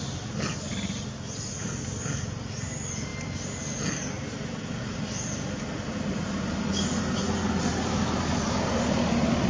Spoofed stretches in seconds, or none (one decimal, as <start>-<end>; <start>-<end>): none